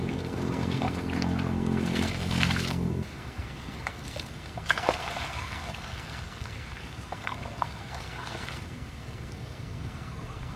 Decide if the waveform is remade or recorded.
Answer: remade